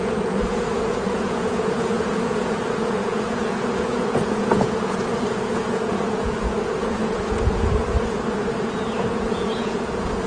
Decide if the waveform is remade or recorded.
remade